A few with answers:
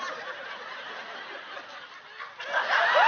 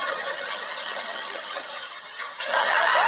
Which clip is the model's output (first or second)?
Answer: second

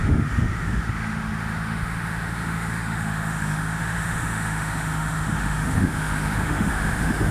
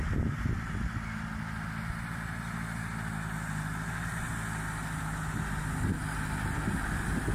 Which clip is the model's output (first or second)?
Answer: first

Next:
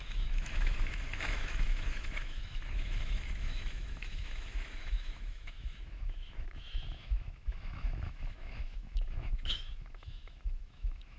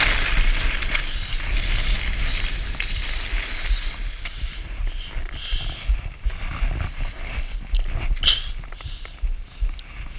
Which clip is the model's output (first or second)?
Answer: first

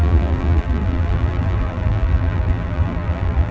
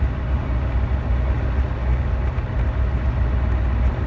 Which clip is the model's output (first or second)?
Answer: first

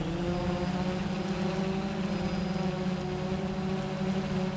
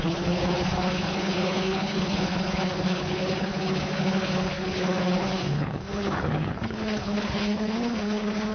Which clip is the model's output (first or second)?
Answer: second